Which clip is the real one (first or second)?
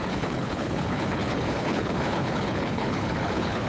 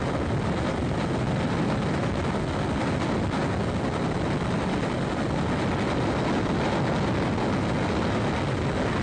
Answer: second